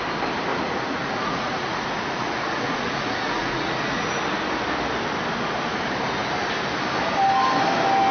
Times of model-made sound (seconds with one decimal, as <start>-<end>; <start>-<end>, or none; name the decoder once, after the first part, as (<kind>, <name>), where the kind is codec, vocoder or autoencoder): 0.5-4.1 (vocoder, Vocos)